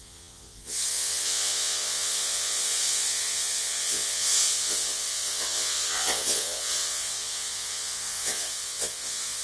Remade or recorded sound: remade